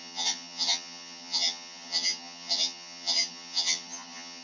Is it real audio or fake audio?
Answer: fake